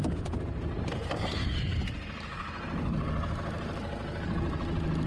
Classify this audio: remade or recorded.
recorded